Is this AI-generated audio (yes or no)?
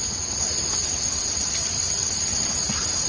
no